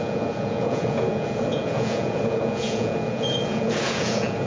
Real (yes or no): no